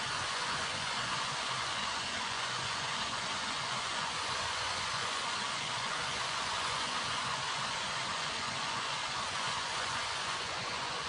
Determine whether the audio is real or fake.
fake